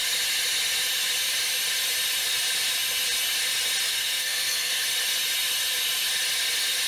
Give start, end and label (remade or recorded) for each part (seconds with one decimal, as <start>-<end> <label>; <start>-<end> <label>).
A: 0.0-3.9 recorded; 3.9-4.7 remade; 4.7-6.9 recorded